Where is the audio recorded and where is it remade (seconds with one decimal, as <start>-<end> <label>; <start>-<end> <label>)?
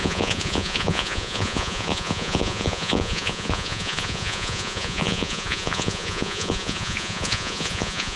0.0-8.2 remade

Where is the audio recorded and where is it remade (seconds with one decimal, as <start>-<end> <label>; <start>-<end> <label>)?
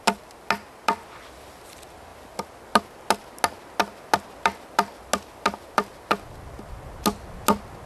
0.0-7.9 recorded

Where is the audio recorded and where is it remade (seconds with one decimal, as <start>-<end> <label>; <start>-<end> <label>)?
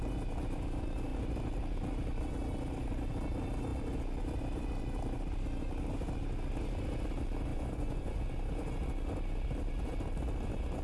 0.0-7.5 recorded; 7.5-8.2 remade; 8.2-10.8 recorded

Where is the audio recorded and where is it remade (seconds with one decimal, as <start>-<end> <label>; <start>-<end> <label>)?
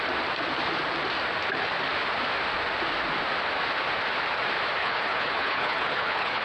0.0-4.8 recorded; 4.8-6.4 remade